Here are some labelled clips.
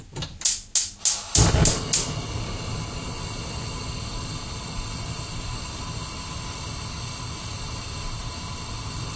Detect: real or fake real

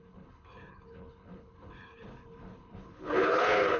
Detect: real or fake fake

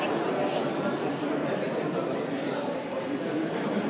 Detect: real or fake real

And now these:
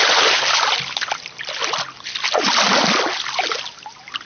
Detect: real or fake real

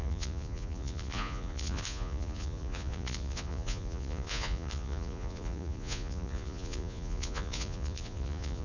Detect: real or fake fake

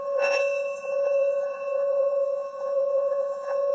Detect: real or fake fake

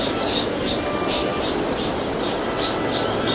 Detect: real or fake real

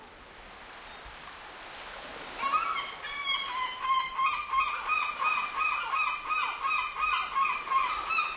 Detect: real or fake real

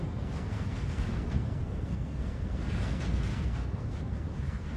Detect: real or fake fake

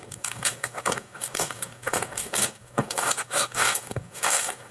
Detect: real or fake fake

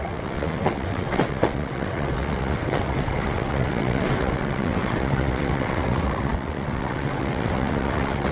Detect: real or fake fake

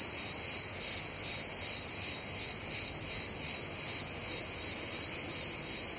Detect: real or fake real